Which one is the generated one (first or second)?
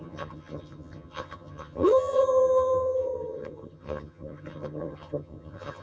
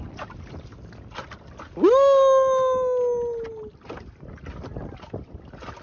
first